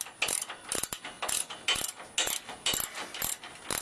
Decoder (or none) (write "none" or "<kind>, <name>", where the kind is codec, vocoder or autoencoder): none